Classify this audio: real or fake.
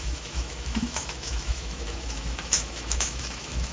fake